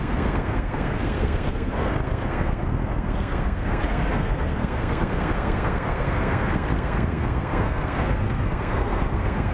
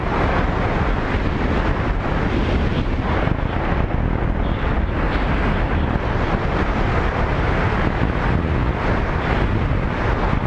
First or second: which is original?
second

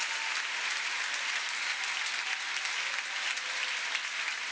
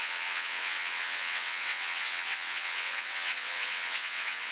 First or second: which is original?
first